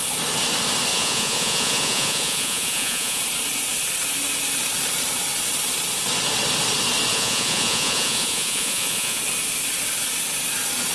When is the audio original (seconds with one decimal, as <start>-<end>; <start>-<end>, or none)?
0.0-0.9; 3.2-7.1; 9.2-10.9